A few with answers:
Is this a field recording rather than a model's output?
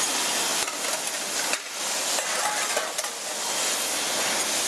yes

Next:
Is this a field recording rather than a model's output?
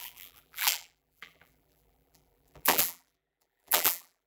no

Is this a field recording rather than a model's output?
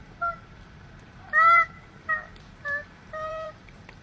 no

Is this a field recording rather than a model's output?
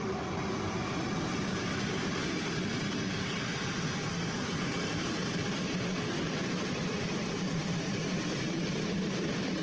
no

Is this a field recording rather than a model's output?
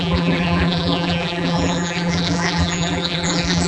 no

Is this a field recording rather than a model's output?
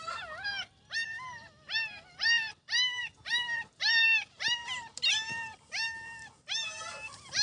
no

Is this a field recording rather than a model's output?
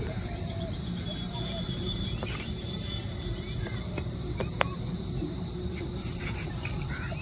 no